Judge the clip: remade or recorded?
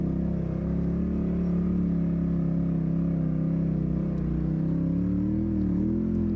recorded